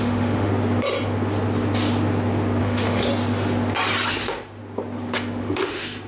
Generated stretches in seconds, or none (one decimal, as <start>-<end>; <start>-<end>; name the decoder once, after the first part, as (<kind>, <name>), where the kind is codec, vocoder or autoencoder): 0.0-0.5 (autoencoder, DAC-VAE); 2.6-3.1; 4.1-4.6; 5.4-6.1